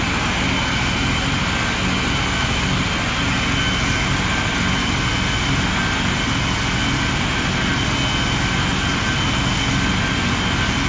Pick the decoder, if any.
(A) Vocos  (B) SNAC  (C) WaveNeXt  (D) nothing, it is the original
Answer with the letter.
D